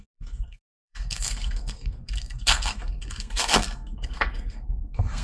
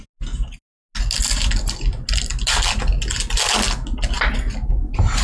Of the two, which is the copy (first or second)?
first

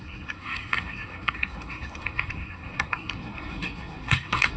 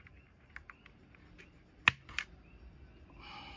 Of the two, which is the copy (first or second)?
first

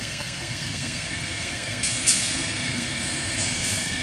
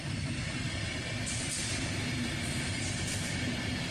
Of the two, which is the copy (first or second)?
first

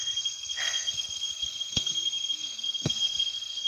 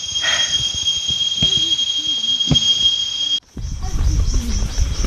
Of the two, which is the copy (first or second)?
first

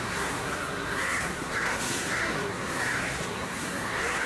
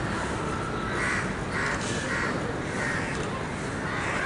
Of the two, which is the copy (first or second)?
first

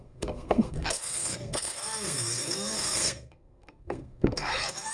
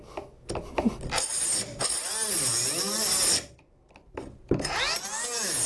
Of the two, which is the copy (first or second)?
first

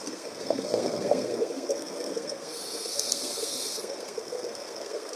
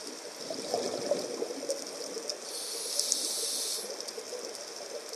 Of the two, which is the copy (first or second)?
first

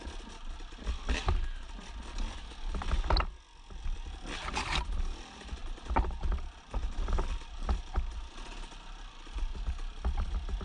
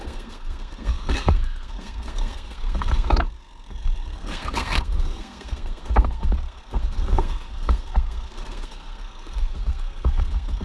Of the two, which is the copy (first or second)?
second